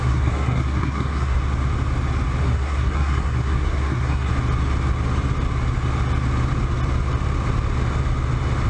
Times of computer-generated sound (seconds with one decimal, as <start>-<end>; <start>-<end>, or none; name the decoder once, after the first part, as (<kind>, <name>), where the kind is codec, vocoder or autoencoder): 0.0-1.4 (codec, SNAC); 2.4-4.3